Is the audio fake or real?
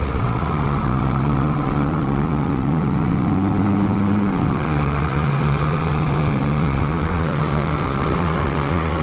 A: fake